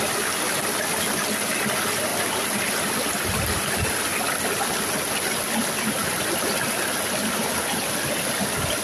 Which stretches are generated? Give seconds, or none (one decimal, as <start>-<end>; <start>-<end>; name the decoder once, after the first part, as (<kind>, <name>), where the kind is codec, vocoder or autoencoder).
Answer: 2.1-4.8 (vocoder, BigVGAN v2)